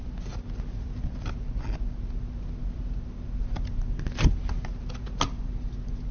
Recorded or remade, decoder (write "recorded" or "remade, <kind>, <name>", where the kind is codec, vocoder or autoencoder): recorded